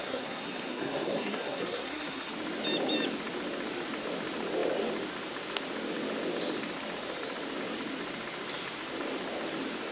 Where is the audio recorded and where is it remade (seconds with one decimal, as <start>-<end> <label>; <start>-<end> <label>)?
0.0-2.3 remade; 2.3-9.9 recorded